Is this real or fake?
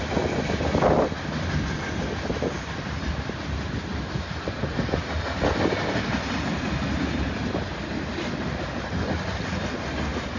real